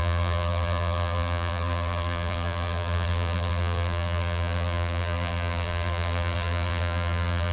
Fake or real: fake